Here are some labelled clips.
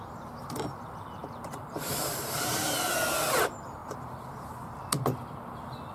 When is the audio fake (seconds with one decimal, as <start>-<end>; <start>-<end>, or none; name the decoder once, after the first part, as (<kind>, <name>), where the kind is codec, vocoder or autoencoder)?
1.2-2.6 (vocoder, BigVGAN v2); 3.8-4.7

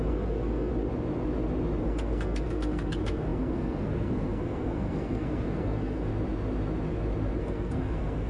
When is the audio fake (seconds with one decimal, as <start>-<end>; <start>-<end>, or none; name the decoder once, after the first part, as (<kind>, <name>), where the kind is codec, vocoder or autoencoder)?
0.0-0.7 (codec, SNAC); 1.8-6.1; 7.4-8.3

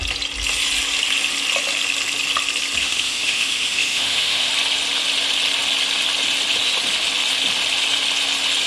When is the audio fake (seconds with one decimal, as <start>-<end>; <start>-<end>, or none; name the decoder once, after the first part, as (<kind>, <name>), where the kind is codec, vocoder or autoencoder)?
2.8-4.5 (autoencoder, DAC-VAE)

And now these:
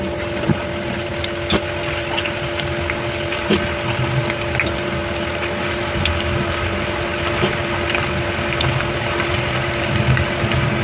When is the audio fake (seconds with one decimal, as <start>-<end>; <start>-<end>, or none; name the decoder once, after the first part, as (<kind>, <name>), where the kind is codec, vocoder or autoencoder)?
none

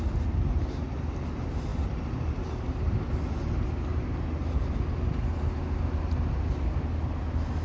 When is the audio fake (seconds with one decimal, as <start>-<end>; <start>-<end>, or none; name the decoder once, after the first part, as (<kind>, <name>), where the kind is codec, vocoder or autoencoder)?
none

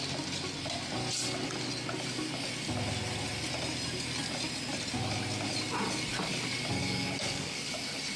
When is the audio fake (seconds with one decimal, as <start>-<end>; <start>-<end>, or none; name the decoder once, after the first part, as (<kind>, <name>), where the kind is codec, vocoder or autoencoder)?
6.8-7.7 (codec, DAC)